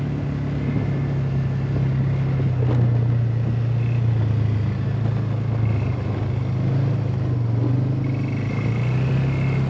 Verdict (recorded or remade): recorded